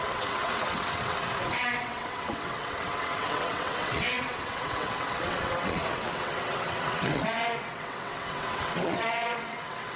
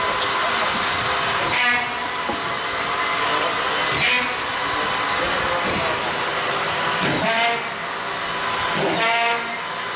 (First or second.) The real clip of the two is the second